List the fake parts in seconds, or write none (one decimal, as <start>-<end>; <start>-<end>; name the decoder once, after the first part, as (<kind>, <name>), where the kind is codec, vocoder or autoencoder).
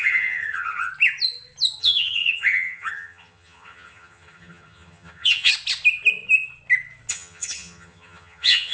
0.0-0.9 (vocoder, HiFi-GAN); 1.8-5.5; 7.1-8.7